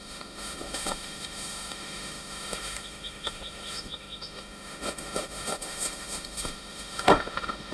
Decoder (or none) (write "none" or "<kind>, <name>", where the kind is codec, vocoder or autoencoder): autoencoder, DAC-VAE